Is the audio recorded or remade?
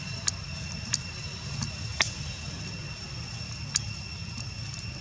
recorded